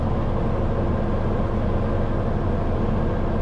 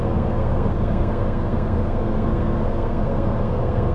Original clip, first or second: first